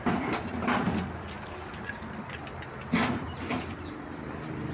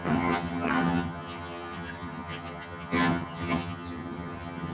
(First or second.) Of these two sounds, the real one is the first